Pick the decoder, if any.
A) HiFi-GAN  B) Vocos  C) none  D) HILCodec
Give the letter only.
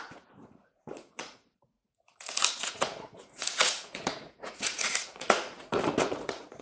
B